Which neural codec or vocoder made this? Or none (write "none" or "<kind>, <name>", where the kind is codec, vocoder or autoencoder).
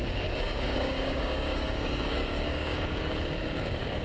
codec, DAC